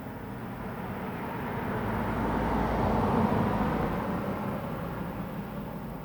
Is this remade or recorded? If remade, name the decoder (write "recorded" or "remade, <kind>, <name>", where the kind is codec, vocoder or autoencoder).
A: recorded